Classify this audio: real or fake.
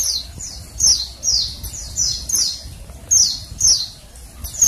real